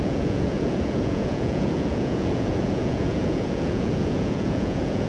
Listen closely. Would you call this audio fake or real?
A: fake